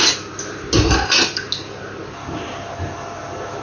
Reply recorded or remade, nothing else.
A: recorded